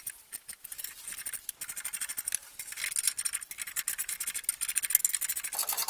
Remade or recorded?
recorded